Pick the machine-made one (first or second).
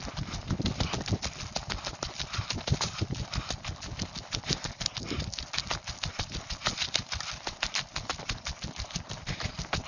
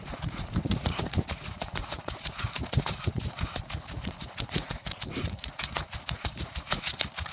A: second